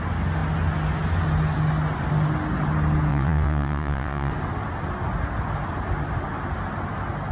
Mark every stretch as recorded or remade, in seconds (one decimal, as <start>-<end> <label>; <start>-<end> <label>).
0.0-3.1 recorded; 3.1-4.3 remade; 4.3-7.3 recorded